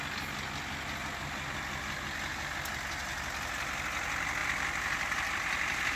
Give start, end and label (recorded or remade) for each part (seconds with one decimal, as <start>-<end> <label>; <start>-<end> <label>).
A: 0.0-4.4 recorded; 4.4-6.0 remade